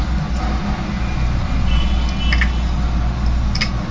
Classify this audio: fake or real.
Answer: real